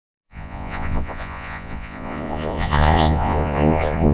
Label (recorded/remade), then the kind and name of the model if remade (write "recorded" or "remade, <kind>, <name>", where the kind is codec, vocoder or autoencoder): remade, vocoder, Vocos